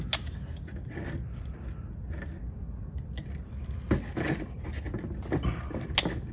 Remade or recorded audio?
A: recorded